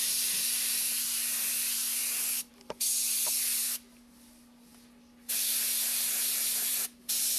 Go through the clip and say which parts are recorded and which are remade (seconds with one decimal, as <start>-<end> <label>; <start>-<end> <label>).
0.0-7.4 recorded